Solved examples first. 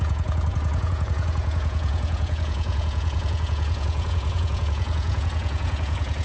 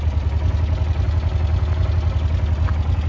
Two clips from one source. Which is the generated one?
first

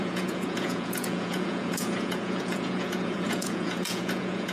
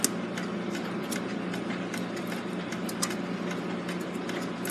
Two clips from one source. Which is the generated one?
first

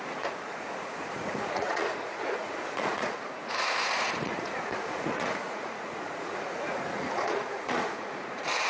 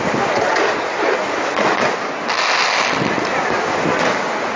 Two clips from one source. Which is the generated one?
first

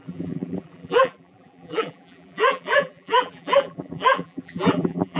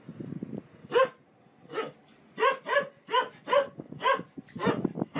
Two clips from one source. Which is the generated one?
first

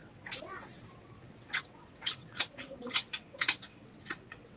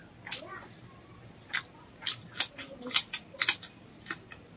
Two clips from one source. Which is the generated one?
first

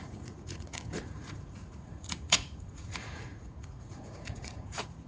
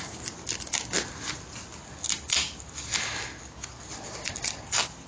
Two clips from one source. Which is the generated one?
first